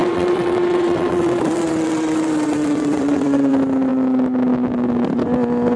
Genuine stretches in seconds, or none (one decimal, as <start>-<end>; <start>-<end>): 3.5-5.8

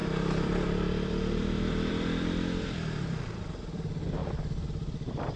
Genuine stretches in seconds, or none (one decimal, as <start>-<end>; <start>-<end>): 4.2-5.4

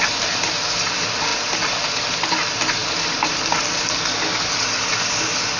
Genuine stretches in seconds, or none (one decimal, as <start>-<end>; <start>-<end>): 0.0-5.6

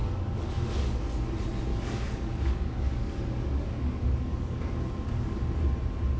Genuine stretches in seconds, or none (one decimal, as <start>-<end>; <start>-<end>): 1.0-1.7; 5.4-6.2